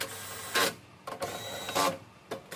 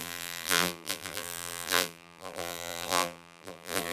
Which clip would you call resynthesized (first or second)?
second